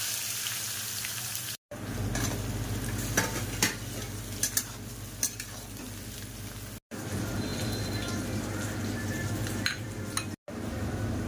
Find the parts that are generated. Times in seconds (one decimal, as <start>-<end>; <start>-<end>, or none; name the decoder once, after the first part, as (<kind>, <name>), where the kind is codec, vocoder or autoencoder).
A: none